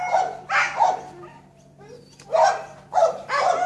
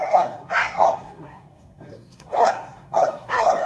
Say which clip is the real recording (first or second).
first